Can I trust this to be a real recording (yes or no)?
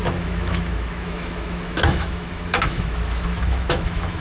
no